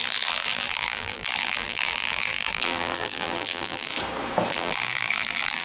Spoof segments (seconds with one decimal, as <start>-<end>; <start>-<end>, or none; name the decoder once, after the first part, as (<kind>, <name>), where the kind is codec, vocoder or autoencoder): 0.0-3.9 (vocoder, BigVGAN v2); 4.5-5.6